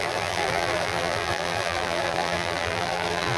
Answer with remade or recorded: remade